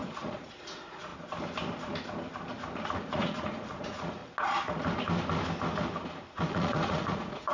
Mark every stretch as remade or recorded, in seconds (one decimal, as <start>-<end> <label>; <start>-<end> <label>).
0.0-1.1 remade; 1.1-3.0 recorded; 3.0-4.2 remade; 4.2-6.5 recorded; 6.5-7.5 remade